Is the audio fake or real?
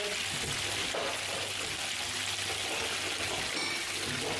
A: real